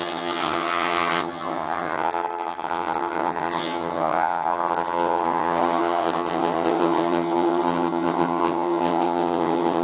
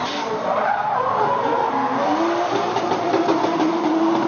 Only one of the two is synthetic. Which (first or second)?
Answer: first